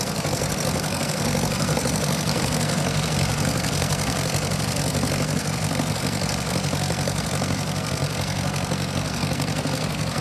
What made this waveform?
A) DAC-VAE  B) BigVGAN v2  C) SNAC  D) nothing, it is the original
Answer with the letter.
C